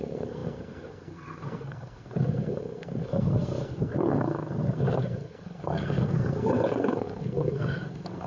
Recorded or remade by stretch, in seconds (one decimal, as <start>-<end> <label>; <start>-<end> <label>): 0.0-8.3 remade